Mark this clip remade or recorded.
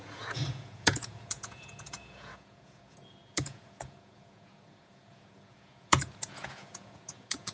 remade